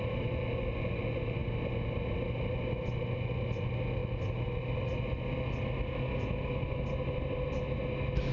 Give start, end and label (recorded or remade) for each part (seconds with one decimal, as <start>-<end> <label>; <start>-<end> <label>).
0.0-8.3 recorded